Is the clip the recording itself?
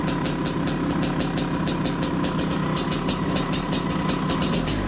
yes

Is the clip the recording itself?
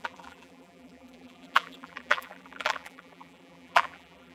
no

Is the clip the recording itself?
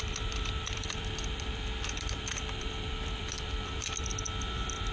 no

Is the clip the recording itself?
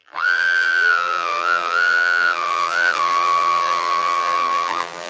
no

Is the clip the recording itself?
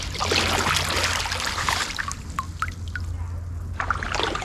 yes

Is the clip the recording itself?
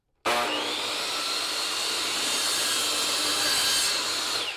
yes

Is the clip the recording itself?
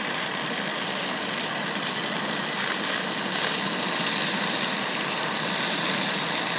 no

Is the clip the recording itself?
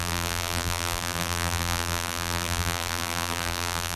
no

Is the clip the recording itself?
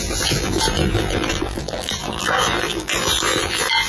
no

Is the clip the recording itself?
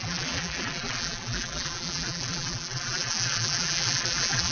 no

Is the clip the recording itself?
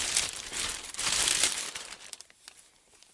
no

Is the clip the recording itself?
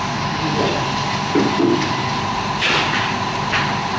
yes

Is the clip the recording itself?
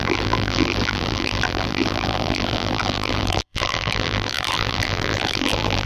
no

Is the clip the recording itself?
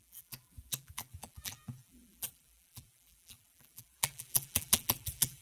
no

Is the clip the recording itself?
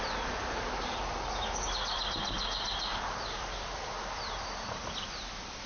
no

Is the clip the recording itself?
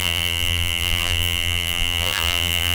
no